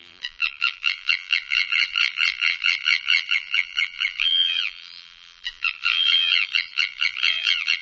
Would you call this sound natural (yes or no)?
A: no